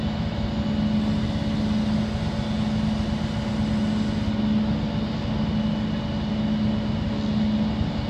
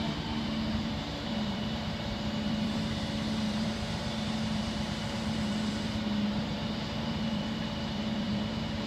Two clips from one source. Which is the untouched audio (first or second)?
first